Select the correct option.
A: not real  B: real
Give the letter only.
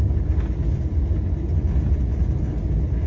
B